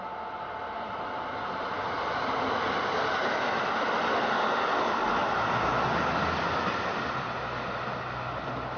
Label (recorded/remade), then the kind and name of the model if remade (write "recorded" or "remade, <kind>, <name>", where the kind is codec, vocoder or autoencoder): recorded